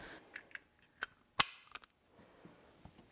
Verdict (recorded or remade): recorded